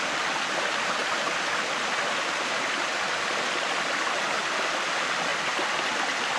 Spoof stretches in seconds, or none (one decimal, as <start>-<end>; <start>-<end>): 5.3-6.4